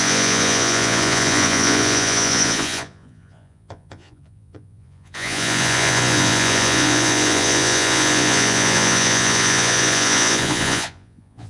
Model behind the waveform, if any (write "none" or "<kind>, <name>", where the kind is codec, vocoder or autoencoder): vocoder, Vocos